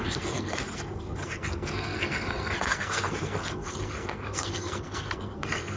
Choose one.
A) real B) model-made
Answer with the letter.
B